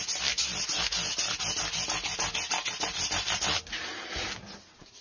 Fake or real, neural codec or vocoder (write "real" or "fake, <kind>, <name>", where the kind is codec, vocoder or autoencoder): real